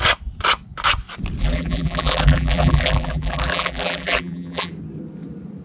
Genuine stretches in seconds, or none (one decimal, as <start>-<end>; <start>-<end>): 0.0-1.4; 4.7-5.6